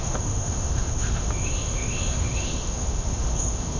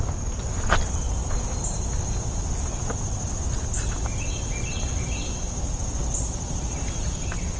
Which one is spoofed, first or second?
first